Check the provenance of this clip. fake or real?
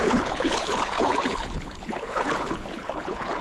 fake